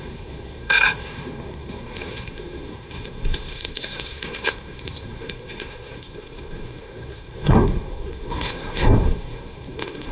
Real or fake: fake